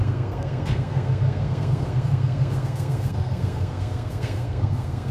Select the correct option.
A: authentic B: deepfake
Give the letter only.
B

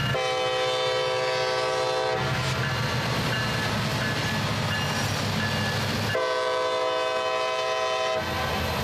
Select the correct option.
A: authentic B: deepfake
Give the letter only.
A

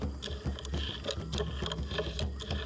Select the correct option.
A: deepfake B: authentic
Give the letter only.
B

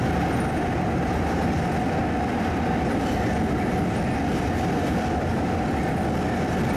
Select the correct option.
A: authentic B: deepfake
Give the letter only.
A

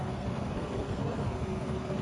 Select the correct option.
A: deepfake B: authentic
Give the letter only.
A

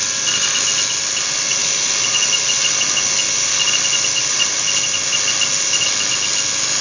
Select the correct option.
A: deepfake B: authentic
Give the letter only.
B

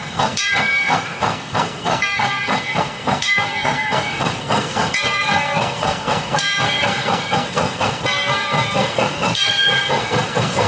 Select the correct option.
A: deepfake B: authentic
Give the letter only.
A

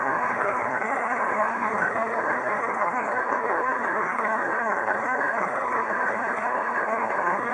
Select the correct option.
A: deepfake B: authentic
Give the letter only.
A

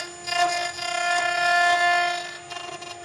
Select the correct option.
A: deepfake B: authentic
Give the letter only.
B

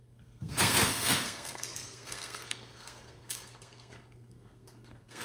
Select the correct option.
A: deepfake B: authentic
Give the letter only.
A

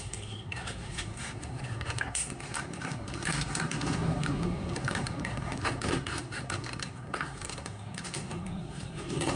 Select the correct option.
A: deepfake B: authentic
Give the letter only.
A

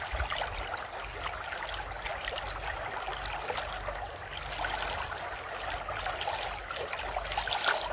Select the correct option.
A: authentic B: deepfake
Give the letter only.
A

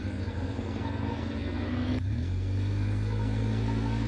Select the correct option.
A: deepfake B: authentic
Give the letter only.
A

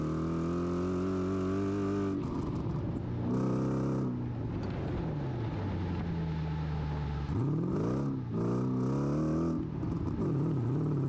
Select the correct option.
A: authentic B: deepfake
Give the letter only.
A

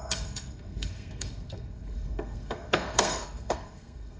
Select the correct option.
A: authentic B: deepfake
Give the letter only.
B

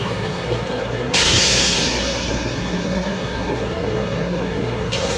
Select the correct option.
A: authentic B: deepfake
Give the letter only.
B